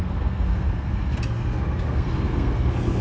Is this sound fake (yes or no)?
yes